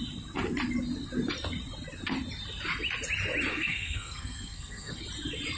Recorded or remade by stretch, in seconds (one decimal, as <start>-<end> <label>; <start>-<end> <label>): 0.0-3.5 recorded; 3.5-5.0 remade; 5.0-5.6 recorded